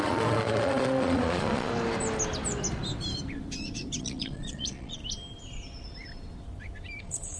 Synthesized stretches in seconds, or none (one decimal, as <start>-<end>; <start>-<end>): 0.0-1.7; 4.0-5.0; 7.0-7.4